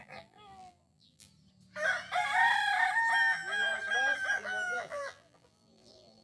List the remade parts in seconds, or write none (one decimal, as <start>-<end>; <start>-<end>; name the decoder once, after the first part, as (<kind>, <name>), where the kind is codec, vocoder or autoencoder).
0.0-1.3 (vocoder, BigVGAN v2); 3.2-3.7; 4.3-6.2